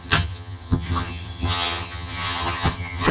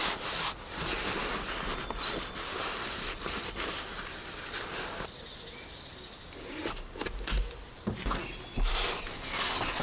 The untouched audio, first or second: second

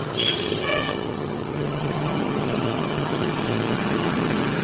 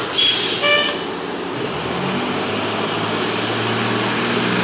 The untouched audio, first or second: second